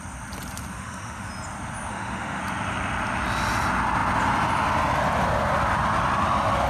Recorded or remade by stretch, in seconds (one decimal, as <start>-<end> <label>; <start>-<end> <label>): 0.0-0.7 recorded; 0.7-1.3 remade; 1.3-1.9 recorded; 1.9-2.4 remade; 2.4-6.7 recorded

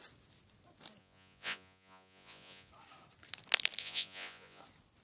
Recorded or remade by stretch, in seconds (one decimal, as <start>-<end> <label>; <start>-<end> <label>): 0.0-1.0 recorded; 1.0-2.7 remade; 2.7-3.8 recorded; 3.8-4.6 remade; 4.6-5.0 recorded

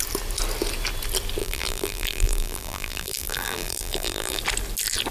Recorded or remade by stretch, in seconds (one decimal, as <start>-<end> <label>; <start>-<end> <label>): 0.0-1.4 recorded; 1.4-4.4 remade; 4.4-5.1 recorded

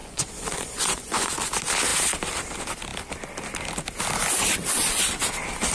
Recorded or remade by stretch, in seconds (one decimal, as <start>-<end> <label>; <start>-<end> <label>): 0.0-1.3 remade; 1.3-5.7 recorded

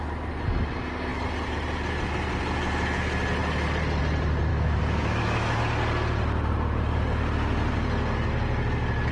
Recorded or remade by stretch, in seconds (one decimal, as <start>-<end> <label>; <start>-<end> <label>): 0.0-4.5 recorded; 4.5-5.6 remade; 5.6-9.1 recorded

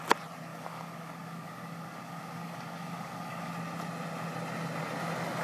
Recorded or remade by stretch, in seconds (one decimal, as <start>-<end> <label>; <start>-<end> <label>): 0.0-0.5 recorded; 0.5-3.5 remade; 3.5-5.4 recorded